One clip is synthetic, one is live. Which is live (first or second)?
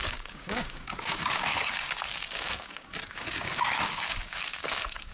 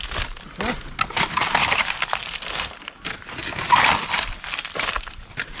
second